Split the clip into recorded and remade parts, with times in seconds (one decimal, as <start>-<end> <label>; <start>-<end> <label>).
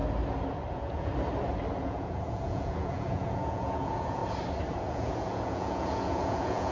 0.0-0.7 recorded; 0.7-1.1 remade; 1.1-1.8 recorded; 1.8-4.2 remade; 4.2-4.8 recorded; 4.8-6.7 remade